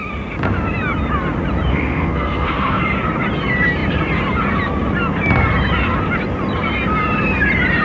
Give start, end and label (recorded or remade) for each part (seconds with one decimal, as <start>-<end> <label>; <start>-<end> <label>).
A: 0.0-1.7 recorded; 1.7-2.8 remade; 2.8-7.8 recorded